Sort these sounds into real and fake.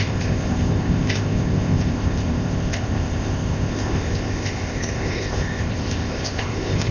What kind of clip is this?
fake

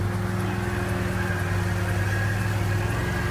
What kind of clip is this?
real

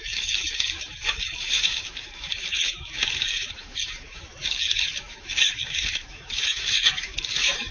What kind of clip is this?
fake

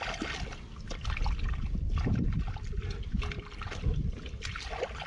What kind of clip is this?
real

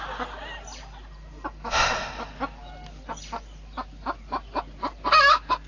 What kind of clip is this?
real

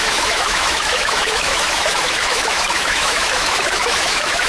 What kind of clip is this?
fake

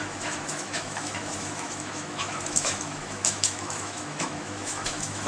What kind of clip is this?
fake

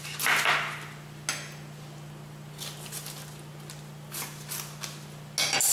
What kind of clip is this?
real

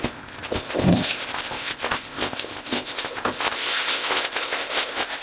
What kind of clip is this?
fake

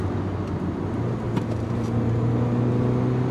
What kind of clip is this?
real